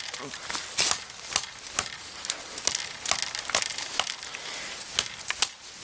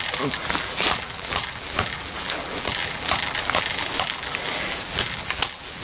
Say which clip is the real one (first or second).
first